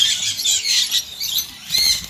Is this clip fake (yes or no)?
yes